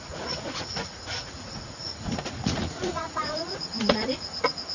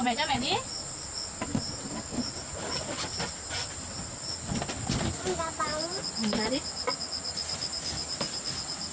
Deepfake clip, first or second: first